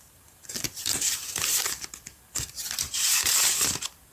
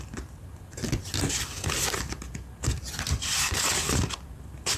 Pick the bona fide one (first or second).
second